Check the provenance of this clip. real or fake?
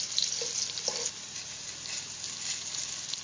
real